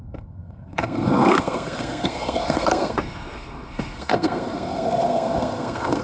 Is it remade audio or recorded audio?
remade